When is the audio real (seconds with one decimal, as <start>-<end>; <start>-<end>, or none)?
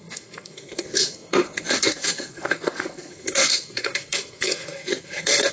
none